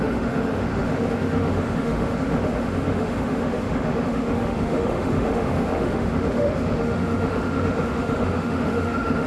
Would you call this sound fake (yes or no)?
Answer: yes